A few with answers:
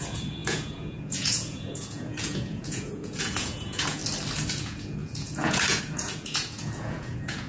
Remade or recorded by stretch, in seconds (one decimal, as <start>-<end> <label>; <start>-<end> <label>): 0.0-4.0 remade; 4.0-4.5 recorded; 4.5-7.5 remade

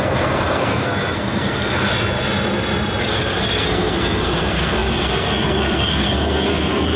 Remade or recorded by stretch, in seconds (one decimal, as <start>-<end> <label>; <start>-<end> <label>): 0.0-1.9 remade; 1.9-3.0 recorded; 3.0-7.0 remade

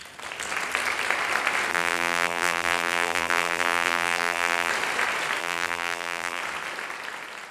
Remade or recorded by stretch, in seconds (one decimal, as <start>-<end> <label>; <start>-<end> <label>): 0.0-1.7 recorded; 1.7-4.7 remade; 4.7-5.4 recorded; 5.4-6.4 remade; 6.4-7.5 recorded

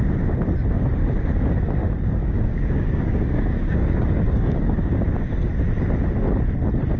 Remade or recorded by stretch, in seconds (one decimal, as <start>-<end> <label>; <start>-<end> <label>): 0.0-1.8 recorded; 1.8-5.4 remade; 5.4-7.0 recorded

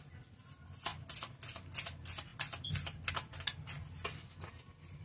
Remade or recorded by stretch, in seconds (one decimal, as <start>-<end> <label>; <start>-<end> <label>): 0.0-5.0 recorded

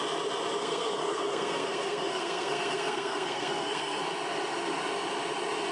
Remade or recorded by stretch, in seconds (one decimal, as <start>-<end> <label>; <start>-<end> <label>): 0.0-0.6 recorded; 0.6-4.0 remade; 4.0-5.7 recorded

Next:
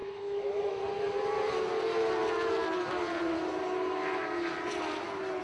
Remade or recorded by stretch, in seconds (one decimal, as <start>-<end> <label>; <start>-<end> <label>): 0.0-0.8 remade; 0.8-5.4 recorded